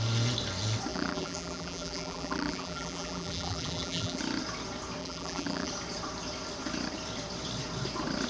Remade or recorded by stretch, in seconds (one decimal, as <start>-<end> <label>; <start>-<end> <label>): 0.0-0.9 recorded; 0.9-4.2 remade; 4.2-5.0 recorded; 5.0-5.7 remade; 5.7-8.3 recorded